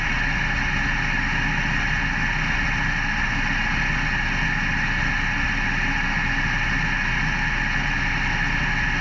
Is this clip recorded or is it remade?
recorded